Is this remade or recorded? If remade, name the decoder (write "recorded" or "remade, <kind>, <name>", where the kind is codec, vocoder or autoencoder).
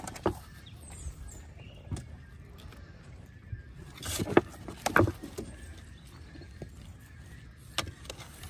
recorded